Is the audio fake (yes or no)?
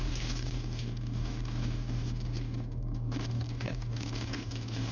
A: yes